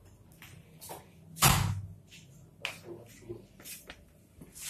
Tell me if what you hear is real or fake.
real